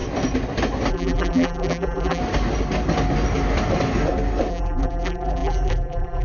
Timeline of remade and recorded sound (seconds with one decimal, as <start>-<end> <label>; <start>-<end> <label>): 0.0-0.9 recorded; 0.9-2.2 remade; 2.2-4.5 recorded; 4.5-6.2 remade

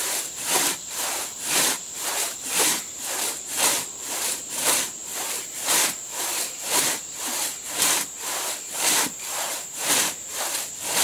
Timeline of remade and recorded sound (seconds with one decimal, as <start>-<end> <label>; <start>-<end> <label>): 0.0-11.0 remade